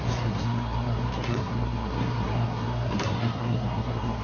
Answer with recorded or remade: remade